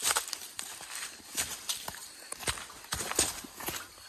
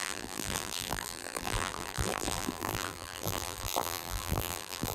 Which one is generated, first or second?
second